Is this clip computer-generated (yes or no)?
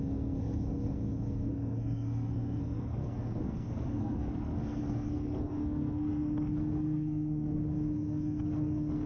yes